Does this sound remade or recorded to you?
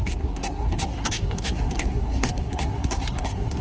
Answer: remade